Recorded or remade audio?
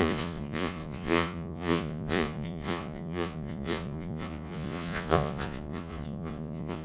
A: remade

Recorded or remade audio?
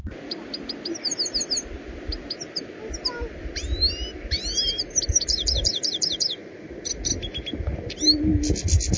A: recorded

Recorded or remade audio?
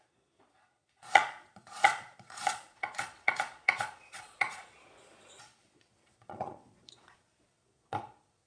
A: remade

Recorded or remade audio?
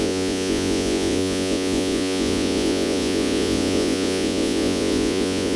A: remade